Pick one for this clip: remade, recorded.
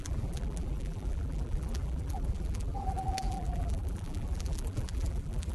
remade